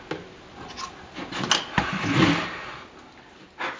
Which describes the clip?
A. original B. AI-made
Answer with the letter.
A